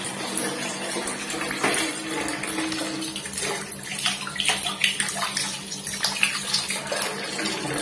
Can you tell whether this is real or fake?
real